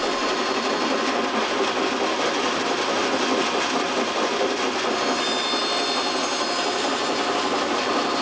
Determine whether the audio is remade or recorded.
recorded